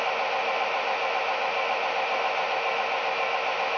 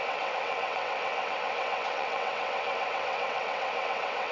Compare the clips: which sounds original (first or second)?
first